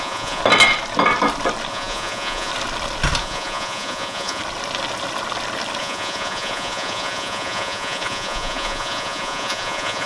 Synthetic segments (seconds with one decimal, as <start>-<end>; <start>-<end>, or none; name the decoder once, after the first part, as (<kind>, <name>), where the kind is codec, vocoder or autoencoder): 0.0-0.4 (vocoder, Vocos); 1.7-2.5; 3.2-4.4; 5.8-10.1